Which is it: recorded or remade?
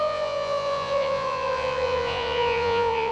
remade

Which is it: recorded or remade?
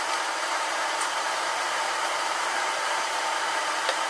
remade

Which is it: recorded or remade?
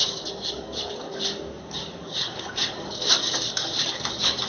remade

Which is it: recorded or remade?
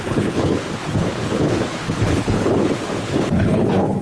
remade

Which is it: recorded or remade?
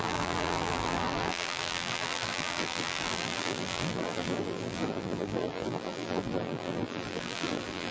remade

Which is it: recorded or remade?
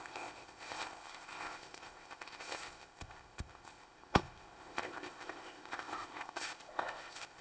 remade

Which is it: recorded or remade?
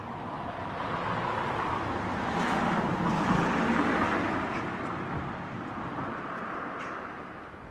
recorded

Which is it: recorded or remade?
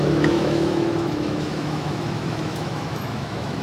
remade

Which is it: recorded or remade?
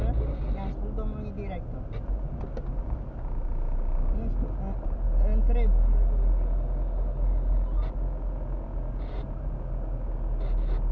recorded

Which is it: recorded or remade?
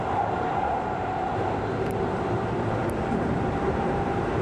remade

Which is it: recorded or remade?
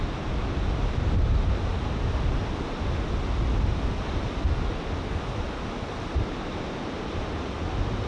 recorded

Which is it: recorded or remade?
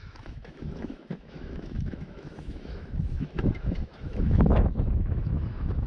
remade